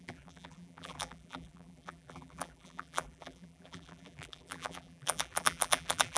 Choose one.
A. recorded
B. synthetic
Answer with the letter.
B